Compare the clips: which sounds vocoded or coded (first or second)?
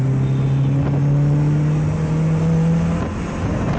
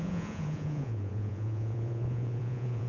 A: second